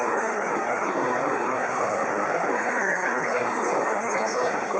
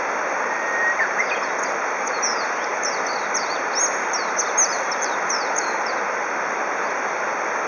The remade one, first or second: first